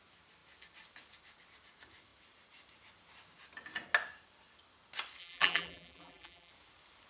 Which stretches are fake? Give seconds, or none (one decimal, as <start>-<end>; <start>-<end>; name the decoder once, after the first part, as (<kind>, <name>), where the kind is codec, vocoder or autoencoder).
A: 5.2-6.5 (vocoder, BigVGAN v2)